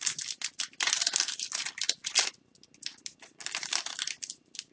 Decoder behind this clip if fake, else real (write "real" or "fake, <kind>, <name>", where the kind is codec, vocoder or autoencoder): real